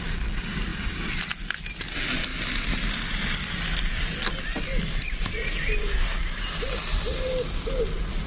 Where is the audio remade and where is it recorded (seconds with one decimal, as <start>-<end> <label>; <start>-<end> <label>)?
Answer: 0.0-0.7 recorded; 0.7-1.4 remade; 1.4-8.3 recorded